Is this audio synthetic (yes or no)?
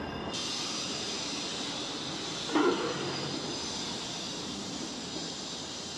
no